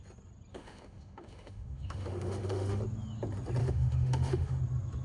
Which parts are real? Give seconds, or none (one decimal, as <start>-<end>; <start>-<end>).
0.0-0.5; 2.8-3.6; 4.6-5.0

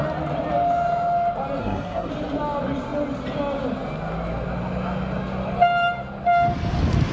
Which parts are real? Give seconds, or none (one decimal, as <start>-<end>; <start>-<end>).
0.0-1.6; 2.1-7.1